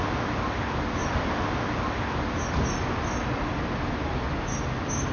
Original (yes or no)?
yes